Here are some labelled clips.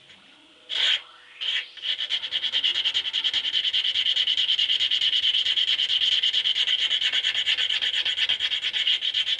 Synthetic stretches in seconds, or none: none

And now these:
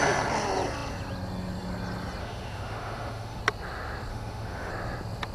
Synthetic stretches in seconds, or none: 2.2-3.4 (autoencoder, DAC-VAE); 4.1-4.7